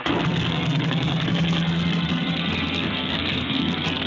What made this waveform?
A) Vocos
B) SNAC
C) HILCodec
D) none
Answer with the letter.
B